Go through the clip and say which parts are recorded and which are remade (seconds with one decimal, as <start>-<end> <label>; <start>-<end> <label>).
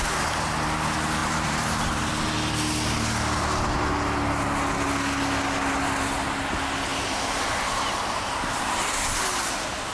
0.0-1.2 recorded; 1.2-2.1 remade; 2.1-9.9 recorded